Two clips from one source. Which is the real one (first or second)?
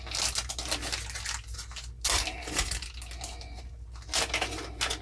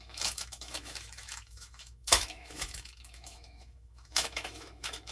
first